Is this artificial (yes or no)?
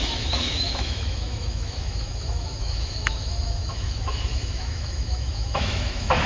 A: yes